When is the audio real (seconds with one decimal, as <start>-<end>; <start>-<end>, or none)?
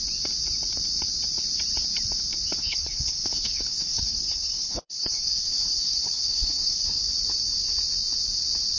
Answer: 0.0-2.6; 7.0-8.8